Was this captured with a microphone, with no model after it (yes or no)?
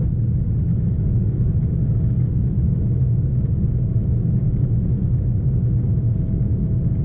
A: yes